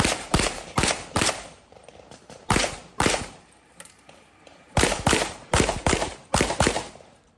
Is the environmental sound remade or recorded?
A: remade